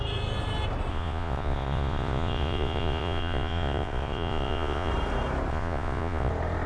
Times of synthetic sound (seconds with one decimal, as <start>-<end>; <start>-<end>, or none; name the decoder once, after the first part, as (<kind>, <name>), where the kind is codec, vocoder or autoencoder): 0.9-4.9 (vocoder, Vocos); 5.5-6.3